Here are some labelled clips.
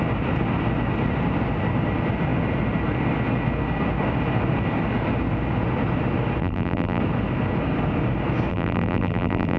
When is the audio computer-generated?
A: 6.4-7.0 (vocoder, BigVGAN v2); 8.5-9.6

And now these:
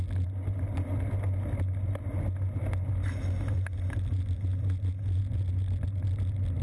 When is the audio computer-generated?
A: none